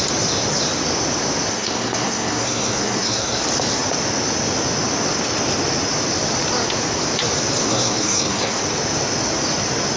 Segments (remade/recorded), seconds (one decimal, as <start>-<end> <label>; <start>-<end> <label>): 0.0-1.5 recorded; 1.5-3.4 remade; 3.4-7.7 recorded; 7.7-8.6 remade; 8.6-10.0 recorded